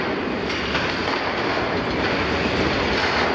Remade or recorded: recorded